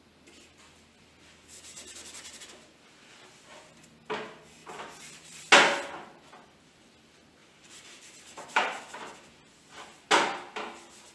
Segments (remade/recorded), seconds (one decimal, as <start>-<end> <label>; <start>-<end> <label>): 0.0-4.6 recorded; 4.6-5.4 remade; 5.4-7.4 recorded; 7.4-8.8 remade; 8.8-11.1 recorded